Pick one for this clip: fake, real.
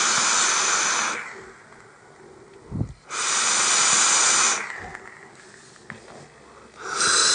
real